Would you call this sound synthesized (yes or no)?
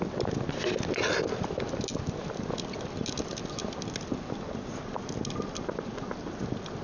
no